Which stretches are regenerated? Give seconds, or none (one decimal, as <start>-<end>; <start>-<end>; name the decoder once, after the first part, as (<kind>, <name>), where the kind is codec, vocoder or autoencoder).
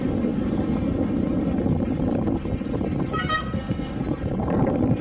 3.4-4.0 (codec, SNAC)